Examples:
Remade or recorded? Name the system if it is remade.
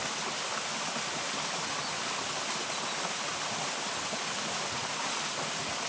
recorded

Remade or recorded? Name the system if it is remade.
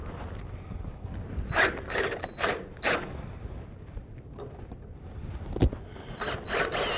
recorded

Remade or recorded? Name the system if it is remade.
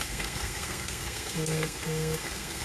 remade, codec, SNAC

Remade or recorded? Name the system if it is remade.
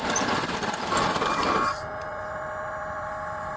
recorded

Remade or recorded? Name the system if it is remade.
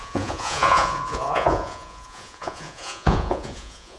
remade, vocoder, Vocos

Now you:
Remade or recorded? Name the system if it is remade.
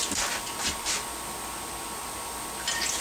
recorded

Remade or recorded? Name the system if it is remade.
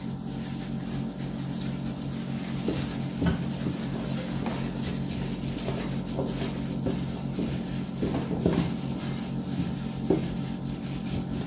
recorded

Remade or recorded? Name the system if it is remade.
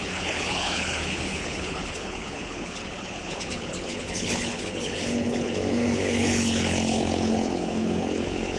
remade, codec, HILCodec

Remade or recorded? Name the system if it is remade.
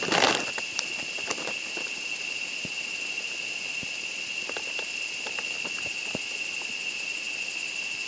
recorded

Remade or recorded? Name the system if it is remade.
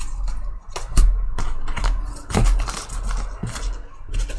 recorded